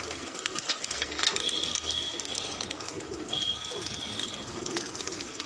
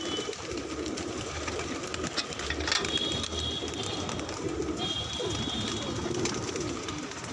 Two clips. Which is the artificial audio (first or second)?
first